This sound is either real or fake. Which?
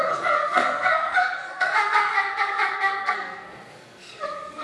fake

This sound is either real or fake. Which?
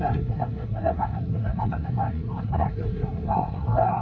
fake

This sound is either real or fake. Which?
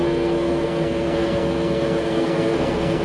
fake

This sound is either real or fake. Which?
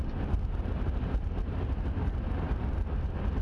real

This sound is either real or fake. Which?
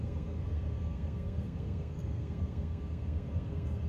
fake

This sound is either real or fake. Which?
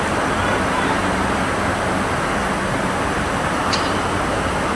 real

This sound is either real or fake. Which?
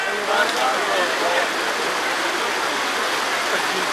real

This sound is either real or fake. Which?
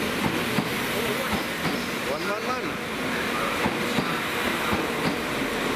real